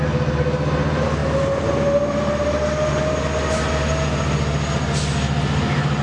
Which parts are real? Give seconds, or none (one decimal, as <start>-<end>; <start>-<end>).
0.0-6.0